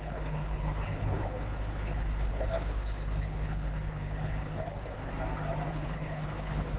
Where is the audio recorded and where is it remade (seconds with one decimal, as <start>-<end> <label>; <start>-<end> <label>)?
0.0-5.1 remade; 5.1-5.7 recorded; 5.7-6.8 remade